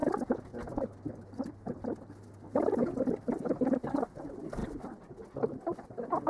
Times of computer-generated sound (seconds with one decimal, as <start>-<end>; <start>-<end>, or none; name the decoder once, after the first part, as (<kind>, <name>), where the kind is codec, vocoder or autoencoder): 2.8-4.6 (vocoder, BigVGAN v2); 5.6-6.3